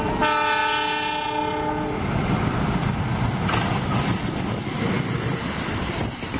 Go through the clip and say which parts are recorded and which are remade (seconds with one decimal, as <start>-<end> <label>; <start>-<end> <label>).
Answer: 0.0-6.4 recorded